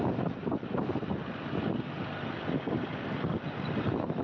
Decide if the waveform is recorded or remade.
recorded